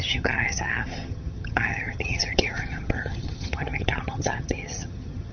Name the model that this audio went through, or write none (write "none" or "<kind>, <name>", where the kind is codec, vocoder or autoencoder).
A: vocoder, HiFi-GAN